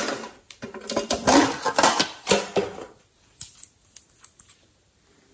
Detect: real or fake real